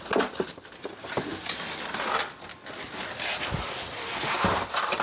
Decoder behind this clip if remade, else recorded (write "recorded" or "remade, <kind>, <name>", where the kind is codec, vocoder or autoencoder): recorded